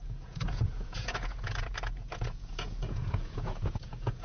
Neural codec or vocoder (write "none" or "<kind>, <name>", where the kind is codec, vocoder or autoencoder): vocoder, Vocos